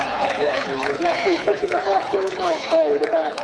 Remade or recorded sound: remade